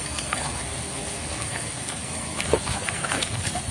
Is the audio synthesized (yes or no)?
yes